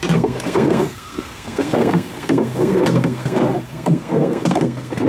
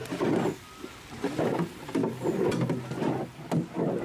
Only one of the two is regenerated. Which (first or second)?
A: first